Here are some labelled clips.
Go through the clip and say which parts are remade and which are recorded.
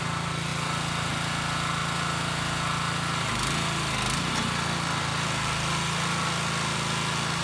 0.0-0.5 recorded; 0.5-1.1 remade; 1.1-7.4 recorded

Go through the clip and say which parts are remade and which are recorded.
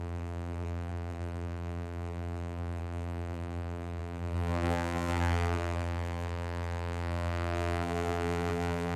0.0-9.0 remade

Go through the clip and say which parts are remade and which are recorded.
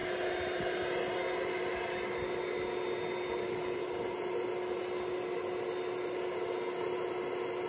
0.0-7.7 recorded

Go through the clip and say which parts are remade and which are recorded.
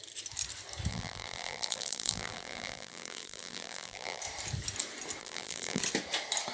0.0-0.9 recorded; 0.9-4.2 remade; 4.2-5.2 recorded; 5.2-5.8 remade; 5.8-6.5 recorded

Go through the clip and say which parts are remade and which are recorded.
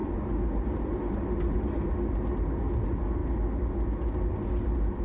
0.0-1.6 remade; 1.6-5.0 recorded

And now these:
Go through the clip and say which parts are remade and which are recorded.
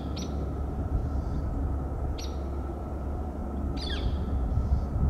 0.0-1.0 remade; 1.0-2.1 recorded; 2.1-3.4 remade; 3.4-5.1 recorded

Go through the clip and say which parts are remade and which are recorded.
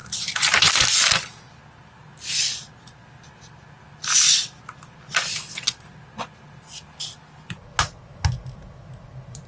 0.0-9.5 recorded